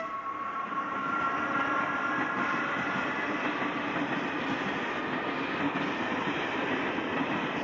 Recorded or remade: recorded